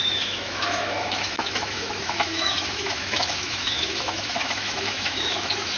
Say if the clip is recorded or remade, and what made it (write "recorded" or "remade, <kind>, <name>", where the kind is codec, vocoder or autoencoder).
remade, autoencoder, DAC-VAE